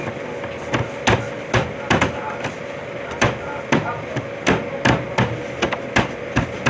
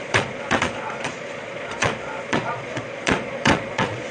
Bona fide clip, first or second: first